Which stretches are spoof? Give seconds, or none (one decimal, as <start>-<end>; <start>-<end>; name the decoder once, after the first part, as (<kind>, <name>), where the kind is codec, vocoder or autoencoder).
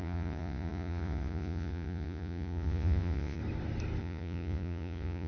0.0-3.4 (vocoder, Vocos); 4.0-5.3